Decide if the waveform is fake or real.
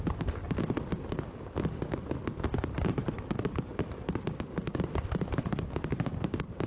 real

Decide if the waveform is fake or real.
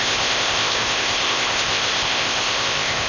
fake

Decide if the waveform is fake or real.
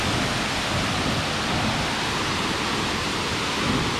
real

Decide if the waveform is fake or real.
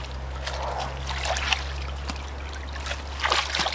real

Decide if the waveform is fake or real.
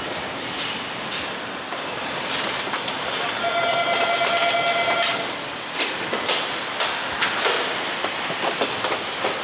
real